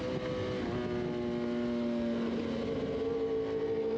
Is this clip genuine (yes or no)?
yes